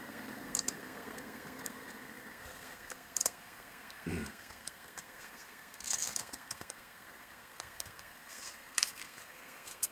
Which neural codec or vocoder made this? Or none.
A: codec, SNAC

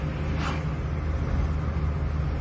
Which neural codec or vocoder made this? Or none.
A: none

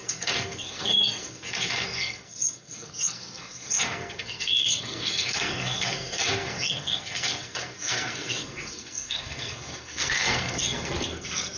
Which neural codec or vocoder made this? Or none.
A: codec, SNAC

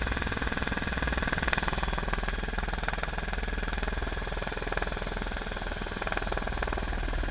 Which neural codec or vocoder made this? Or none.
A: none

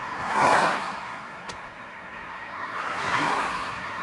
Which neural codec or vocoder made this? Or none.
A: codec, SNAC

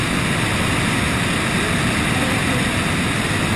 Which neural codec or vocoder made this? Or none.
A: none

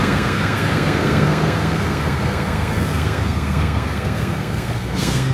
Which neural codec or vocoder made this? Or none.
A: codec, SNAC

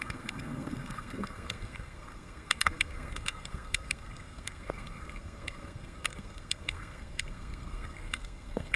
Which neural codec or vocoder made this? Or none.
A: codec, SNAC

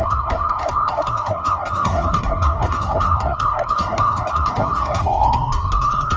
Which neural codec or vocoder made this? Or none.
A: codec, SNAC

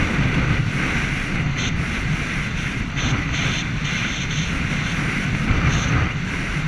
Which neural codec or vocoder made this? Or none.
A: none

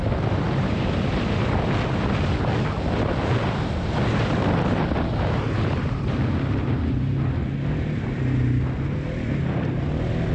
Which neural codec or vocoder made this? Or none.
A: none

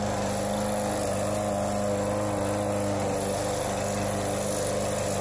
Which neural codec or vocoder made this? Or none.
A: none